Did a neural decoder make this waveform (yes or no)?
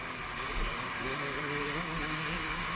yes